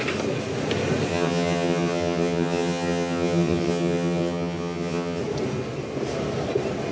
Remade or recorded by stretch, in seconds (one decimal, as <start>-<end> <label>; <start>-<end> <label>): 0.0-1.1 recorded; 1.1-5.2 remade; 5.2-6.9 recorded